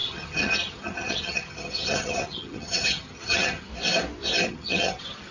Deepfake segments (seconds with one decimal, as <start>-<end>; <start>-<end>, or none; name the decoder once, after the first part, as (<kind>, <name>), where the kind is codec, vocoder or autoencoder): 0.0-3.7 (vocoder, HiFi-GAN); 4.5-5.3

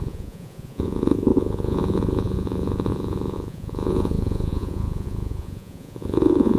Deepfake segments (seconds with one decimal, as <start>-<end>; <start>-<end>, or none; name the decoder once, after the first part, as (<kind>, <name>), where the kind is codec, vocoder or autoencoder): 0.0-6.6 (vocoder, Vocos)